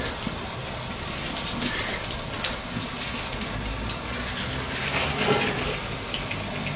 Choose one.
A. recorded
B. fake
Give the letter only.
A